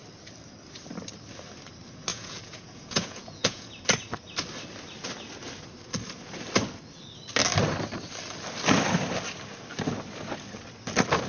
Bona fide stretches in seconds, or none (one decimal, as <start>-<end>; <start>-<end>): 0.0-2.1; 3.7-11.3